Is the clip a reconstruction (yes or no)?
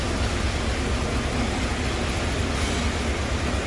no